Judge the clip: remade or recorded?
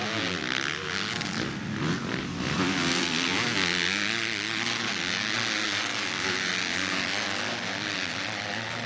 recorded